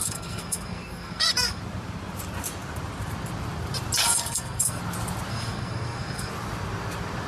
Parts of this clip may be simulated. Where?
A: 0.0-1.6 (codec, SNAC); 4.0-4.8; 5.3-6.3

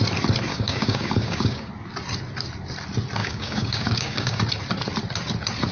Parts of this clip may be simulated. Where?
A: 0.5-1.7 (codec, DAC); 3.2-4.4

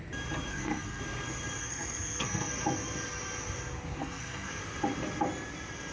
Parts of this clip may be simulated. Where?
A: 0.5-1.0 (codec, SNAC); 1.6-2.5; 4.0-4.6